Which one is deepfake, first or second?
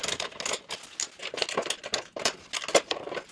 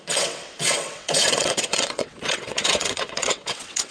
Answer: second